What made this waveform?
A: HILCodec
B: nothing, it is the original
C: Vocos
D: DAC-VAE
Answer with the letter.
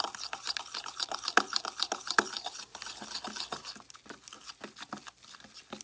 B